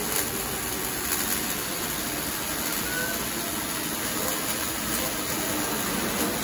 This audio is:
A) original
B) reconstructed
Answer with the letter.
A